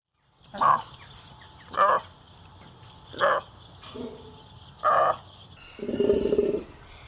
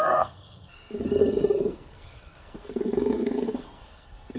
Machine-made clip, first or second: second